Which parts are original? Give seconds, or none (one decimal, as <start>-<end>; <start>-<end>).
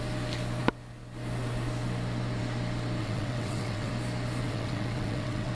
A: 0.0-3.0; 3.9-4.4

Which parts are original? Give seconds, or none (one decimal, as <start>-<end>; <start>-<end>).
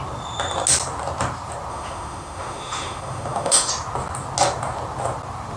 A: 0.0-1.7; 3.7-5.6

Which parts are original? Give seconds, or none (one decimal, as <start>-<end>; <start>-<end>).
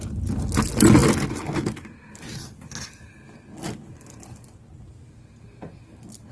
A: 0.0-6.3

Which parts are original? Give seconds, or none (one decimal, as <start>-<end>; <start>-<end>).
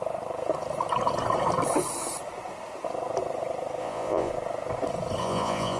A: 0.0-3.8; 4.3-5.2